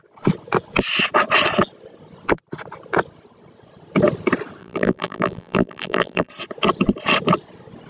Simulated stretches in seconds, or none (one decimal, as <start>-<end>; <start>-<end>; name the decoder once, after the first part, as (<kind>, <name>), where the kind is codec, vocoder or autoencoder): 4.6-6.3 (vocoder, BigVGAN v2)